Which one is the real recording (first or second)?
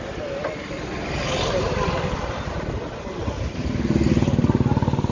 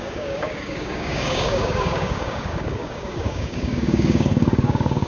first